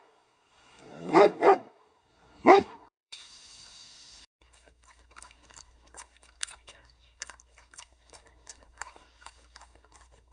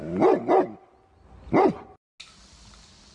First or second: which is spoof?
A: first